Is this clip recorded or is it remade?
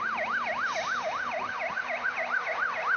remade